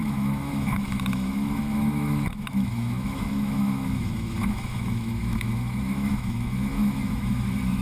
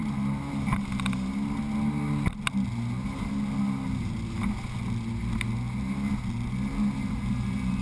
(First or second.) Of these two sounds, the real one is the second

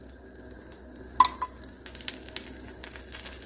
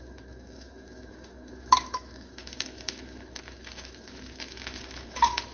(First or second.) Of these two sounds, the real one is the first